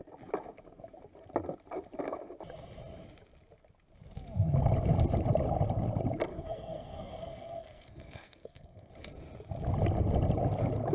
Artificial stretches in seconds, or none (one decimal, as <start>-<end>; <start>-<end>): 6.3-8.9